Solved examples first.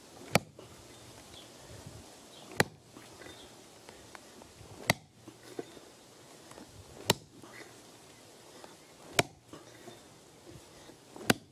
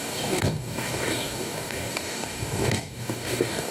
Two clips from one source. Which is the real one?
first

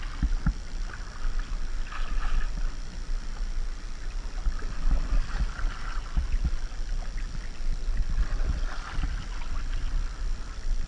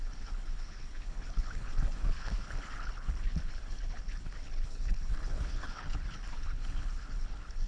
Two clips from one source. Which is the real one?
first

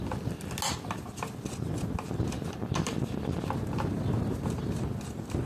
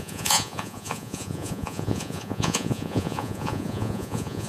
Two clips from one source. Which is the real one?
first